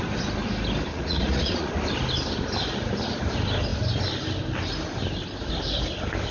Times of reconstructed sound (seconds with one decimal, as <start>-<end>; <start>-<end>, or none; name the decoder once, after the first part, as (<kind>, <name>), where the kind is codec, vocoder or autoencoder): 0.9-1.7 (vocoder, Vocos)